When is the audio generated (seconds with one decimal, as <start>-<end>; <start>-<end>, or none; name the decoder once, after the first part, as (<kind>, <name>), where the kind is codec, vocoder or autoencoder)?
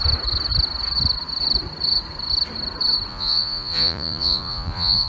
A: 3.1-5.1 (vocoder, Vocos)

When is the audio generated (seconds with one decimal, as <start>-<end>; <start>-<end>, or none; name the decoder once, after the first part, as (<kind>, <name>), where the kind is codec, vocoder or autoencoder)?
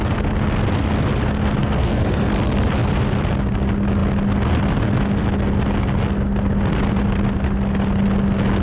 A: 1.6-2.3 (codec, SNAC)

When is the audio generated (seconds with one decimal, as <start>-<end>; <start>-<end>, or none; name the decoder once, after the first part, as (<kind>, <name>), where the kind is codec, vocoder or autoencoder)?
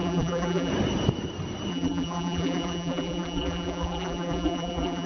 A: 0.0-0.7 (vocoder, BigVGAN v2); 1.7-5.1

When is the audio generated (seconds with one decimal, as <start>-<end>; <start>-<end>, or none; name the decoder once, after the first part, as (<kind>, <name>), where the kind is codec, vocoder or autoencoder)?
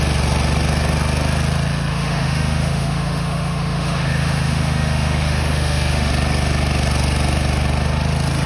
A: 1.9-6.1 (autoencoder, DAC-VAE)